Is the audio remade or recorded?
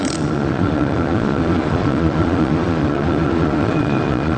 remade